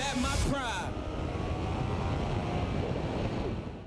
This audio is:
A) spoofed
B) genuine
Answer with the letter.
B